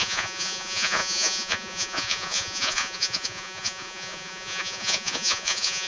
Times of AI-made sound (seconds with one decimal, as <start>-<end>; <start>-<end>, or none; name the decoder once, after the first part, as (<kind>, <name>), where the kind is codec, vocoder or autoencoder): 0.0-5.9 (vocoder, Vocos)